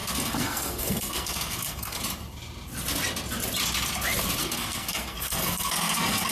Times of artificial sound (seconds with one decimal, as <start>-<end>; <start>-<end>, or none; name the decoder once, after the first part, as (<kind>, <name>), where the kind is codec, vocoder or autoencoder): 0.0-2.0 (codec, SNAC); 4.4-6.3

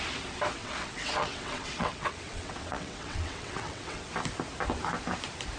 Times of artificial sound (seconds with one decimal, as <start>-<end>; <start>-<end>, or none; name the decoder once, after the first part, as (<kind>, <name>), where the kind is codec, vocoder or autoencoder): 0.6-4.0 (vocoder, WaveNeXt)

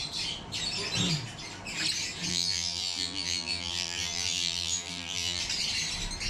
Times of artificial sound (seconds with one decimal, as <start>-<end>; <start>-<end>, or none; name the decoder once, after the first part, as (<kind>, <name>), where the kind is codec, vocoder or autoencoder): 2.3-5.4 (vocoder, BigVGAN v2)

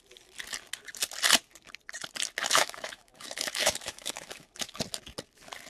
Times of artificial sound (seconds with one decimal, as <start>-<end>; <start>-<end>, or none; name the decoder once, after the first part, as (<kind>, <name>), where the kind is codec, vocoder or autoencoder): 2.4-4.8 (autoencoder, DAC-VAE)

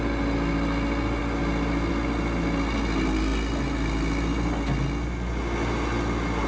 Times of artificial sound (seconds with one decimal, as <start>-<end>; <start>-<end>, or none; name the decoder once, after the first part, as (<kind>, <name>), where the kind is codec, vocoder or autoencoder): none

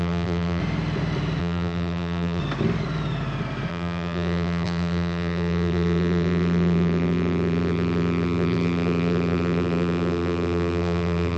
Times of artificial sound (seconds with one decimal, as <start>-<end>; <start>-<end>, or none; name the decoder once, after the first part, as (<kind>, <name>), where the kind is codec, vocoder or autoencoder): 0.0-0.6 (vocoder, BigVGAN v2); 1.4-2.4; 3.7-11.4

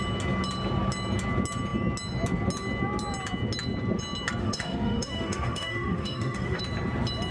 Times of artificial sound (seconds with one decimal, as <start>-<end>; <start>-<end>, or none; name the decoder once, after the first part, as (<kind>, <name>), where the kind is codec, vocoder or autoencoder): 4.4-6.6 (autoencoder, DAC-VAE)